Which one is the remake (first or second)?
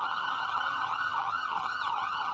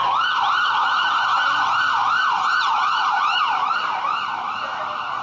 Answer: first